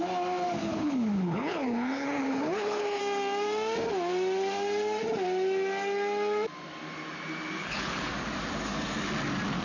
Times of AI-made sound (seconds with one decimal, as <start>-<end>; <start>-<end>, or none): 0.6-3.0; 7.6-8.1

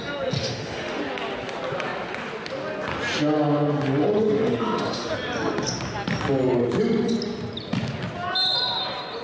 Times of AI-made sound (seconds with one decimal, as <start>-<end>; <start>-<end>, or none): 0.4-1.0; 4.0-5.1

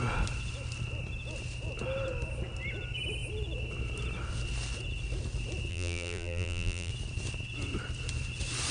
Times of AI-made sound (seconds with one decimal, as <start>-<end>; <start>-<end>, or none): 5.7-6.9

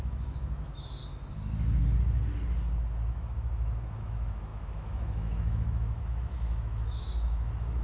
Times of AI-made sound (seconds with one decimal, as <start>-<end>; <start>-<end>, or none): 0.0-1.0; 3.1-7.8

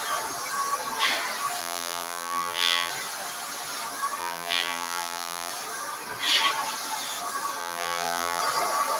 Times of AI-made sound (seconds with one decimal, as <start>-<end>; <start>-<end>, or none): 1.6-2.9; 4.2-5.5; 7.6-8.4

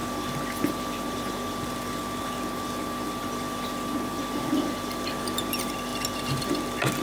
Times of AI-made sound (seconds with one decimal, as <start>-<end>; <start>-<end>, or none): none

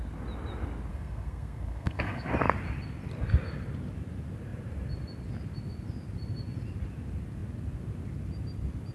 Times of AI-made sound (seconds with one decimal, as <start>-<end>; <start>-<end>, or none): 0.9-2.3

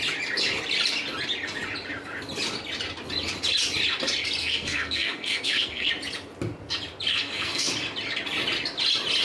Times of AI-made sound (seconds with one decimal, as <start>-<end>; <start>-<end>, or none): 4.4-5.9; 7.1-7.7